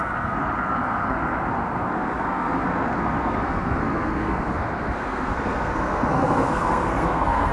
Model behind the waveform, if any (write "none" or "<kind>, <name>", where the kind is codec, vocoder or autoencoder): codec, SNAC